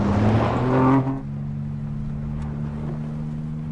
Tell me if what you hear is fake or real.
real